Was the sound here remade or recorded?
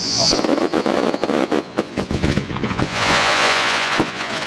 remade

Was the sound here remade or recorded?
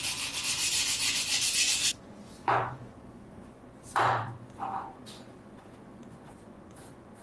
remade